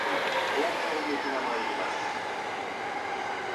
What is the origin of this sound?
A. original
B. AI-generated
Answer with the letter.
A